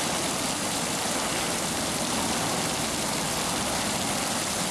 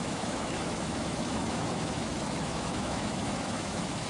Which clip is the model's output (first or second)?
second